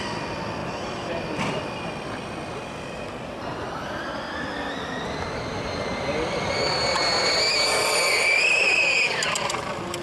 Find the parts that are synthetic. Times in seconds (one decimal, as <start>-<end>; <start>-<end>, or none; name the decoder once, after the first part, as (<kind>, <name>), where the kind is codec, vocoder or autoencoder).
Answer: none